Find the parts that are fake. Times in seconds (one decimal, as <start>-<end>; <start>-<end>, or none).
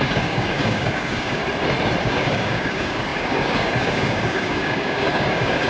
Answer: 0.0-1.4; 2.0-5.7